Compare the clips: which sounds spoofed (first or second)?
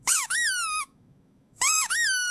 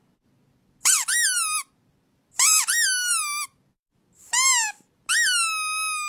first